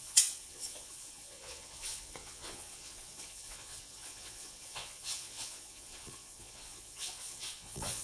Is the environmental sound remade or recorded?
remade